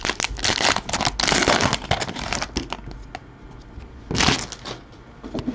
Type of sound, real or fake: real